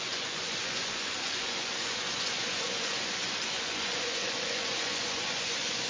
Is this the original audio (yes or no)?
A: no